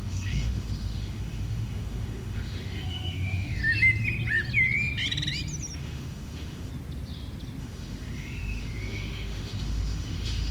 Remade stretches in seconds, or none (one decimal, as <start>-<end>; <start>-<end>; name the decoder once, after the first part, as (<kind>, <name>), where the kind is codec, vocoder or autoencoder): 0.0-3.6 (autoencoder, DAC-VAE); 5.8-6.7; 7.6-10.5

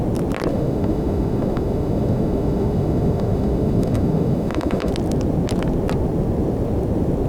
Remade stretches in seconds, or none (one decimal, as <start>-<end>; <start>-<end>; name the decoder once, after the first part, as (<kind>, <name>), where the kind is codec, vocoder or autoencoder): 0.5-4.9 (autoencoder, DAC-VAE)

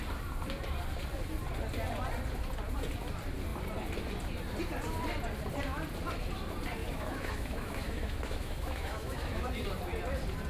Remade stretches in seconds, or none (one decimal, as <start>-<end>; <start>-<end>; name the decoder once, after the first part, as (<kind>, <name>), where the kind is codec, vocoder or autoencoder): 6.8-9.5 (autoencoder, DAC-VAE)

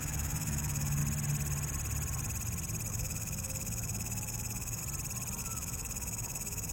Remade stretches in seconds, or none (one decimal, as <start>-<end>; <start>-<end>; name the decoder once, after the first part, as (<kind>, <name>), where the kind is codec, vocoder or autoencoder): 0.0-1.0 (autoencoder, DAC-VAE); 2.9-4.8; 5.4-6.7

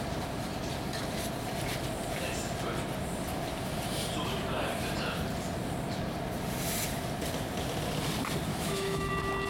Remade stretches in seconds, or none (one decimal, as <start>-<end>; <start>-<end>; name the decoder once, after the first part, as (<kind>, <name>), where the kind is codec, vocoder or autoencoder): 8.5-9.1 (autoencoder, DAC-VAE)